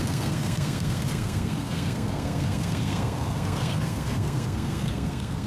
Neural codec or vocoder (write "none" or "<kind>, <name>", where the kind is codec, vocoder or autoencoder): codec, SNAC